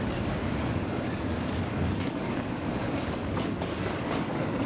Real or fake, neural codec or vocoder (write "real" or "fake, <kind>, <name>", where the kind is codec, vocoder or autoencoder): fake, codec, DAC